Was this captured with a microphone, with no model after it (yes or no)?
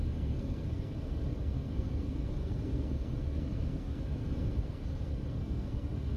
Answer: no